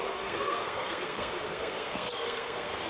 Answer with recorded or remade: remade